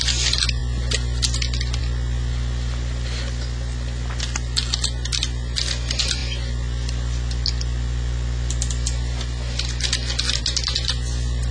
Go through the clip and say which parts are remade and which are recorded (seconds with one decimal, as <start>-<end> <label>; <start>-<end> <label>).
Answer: 0.0-11.5 recorded